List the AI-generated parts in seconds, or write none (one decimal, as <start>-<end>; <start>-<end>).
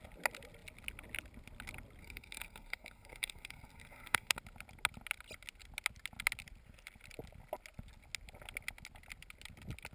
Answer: 2.0-4.4